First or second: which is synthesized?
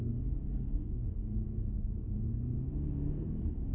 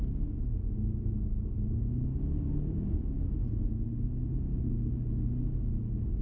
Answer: first